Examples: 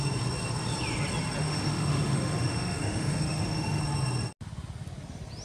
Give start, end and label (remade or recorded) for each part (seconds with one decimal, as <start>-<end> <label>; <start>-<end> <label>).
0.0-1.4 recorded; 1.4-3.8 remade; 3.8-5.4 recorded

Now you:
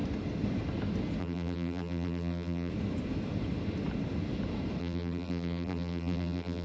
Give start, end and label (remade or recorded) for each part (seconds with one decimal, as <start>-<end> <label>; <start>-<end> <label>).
0.0-1.2 recorded; 1.2-2.7 remade; 2.7-4.8 recorded; 4.8-6.6 remade

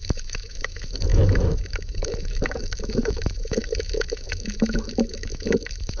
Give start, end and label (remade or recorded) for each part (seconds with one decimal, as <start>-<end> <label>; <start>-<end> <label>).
0.0-6.0 remade

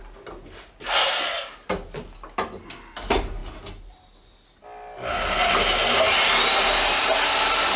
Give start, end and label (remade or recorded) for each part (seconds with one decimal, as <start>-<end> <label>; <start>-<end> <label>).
0.0-7.8 recorded

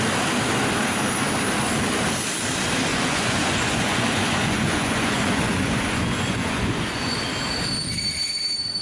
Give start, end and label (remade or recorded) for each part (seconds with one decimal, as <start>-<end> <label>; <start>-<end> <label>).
0.0-2.9 recorded; 2.9-7.2 remade; 7.2-8.8 recorded